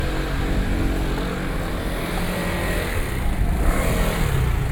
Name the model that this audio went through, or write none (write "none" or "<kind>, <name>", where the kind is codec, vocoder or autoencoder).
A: none